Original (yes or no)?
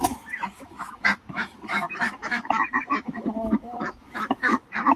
no